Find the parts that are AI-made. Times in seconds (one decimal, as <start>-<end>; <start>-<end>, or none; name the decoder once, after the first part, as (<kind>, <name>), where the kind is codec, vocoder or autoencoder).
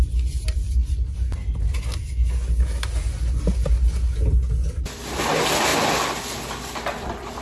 none